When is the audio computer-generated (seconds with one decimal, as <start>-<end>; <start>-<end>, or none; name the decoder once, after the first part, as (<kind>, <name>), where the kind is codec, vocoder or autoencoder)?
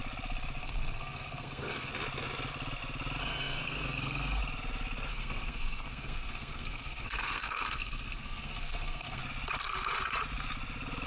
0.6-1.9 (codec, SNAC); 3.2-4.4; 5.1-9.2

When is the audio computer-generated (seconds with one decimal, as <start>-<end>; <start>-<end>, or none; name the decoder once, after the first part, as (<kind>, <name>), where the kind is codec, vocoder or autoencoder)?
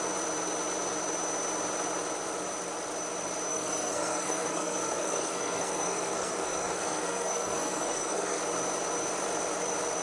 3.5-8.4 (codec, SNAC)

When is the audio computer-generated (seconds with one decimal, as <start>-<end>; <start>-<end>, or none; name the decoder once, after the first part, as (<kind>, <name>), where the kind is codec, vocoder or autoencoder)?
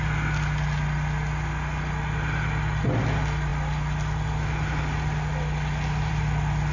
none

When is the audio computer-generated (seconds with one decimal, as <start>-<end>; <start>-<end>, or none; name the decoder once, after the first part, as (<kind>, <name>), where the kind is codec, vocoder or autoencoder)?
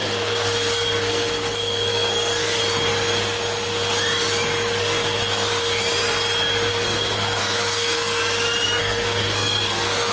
0.0-2.6 (codec, SNAC); 4.8-5.8; 6.7-8.2; 8.8-10.1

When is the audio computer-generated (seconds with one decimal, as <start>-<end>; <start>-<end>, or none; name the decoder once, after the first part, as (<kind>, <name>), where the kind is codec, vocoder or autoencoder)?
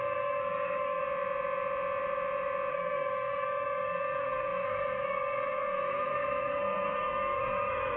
0.0-1.0 (codec, SNAC); 2.7-8.0